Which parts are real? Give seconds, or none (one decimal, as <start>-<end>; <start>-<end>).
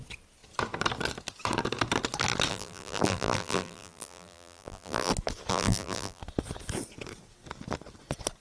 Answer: 0.0-2.5; 5.1-5.5; 6.2-8.4